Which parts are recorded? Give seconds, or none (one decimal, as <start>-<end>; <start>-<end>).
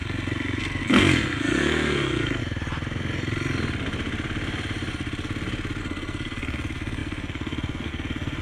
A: 2.4-5.8